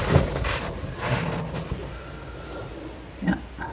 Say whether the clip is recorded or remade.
recorded